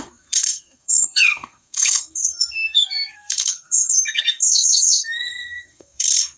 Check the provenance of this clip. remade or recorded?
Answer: remade